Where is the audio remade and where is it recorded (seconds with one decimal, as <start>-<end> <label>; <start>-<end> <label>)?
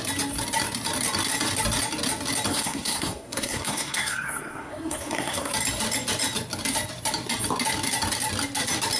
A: 0.0-2.5 recorded; 2.5-5.5 remade; 5.5-9.0 recorded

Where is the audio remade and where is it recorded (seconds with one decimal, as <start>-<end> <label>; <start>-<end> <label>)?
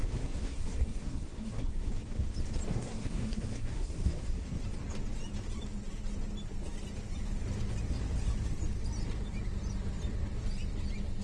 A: 0.0-1.9 remade; 1.9-2.7 recorded; 2.7-4.6 remade; 4.6-11.2 recorded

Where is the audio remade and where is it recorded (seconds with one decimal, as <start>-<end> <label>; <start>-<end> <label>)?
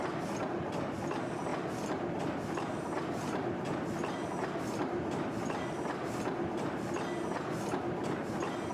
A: 0.0-8.7 recorded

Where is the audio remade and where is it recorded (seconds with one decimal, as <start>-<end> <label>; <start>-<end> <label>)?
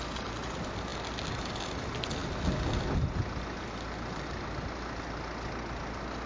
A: 0.0-6.3 recorded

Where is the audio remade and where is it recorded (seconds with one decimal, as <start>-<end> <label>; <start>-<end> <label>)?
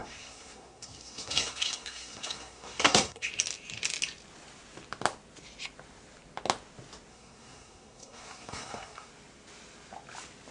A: 0.0-3.3 remade; 3.3-7.1 recorded; 7.1-9.1 remade; 9.1-10.5 recorded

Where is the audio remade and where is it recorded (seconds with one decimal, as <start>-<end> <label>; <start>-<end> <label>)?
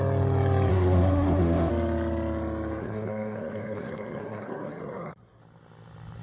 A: 0.0-0.7 recorded; 0.7-1.7 remade; 1.7-2.8 recorded; 2.8-5.4 remade; 5.4-6.2 recorded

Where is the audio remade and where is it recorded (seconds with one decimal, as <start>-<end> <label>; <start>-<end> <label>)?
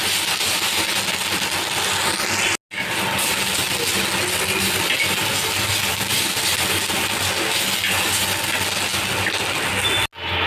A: 0.0-10.5 recorded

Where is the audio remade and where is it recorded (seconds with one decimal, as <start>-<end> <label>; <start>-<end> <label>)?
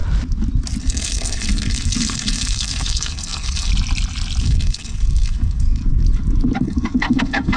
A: 0.0-0.8 recorded; 0.8-3.7 remade; 3.7-4.4 recorded; 4.4-5.8 remade; 5.8-6.6 recorded; 6.6-7.6 remade